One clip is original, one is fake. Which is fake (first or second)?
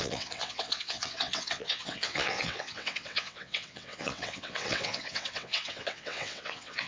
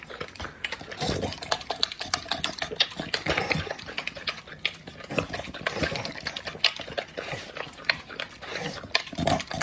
first